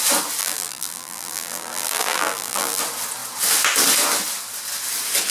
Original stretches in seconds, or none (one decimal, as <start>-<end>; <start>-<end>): 0.0-0.4; 2.8-5.3